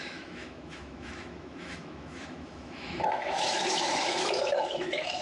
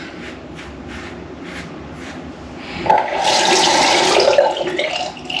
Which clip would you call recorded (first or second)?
second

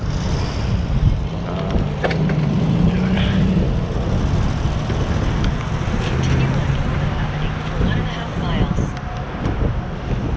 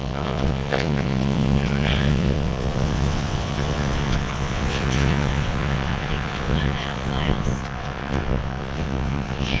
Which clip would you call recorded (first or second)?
first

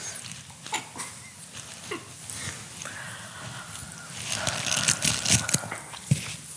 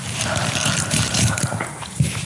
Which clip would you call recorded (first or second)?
first